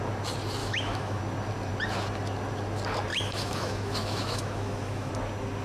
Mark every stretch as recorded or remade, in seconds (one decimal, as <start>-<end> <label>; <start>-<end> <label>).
0.0-0.6 recorded; 0.6-1.2 remade; 1.2-3.1 recorded; 3.1-5.1 remade; 5.1-5.6 recorded